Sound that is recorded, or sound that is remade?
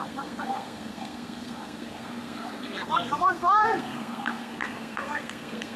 remade